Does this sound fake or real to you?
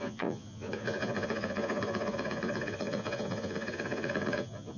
fake